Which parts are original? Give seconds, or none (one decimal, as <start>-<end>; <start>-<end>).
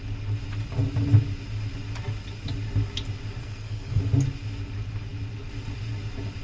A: 0.0-3.4; 4.0-6.4